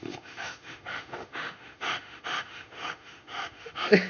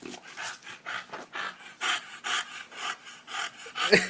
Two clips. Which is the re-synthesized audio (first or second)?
first